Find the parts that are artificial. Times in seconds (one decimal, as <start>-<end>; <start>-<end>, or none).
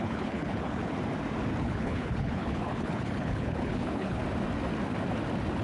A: 0.0-0.8; 1.6-4.2